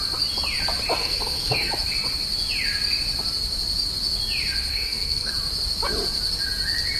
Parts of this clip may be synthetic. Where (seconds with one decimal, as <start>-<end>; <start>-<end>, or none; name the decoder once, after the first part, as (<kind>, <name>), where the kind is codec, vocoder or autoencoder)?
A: 1.0-1.7 (codec, SNAC); 4.7-5.3